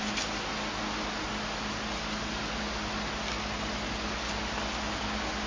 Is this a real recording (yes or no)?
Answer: yes